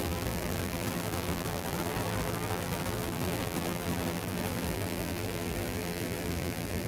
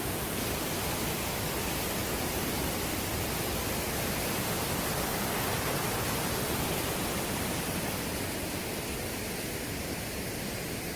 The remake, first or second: first